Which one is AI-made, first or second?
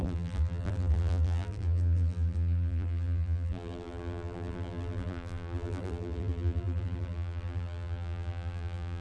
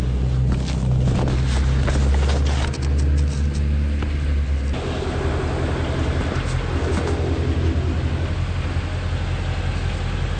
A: first